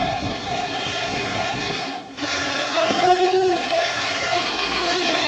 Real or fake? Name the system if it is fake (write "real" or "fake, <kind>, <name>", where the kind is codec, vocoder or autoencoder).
fake, codec, SNAC